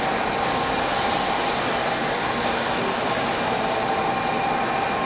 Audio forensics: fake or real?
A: real